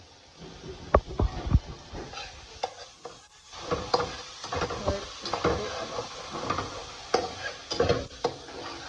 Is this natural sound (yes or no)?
yes